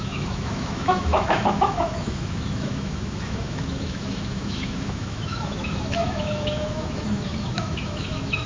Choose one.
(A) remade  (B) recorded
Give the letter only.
A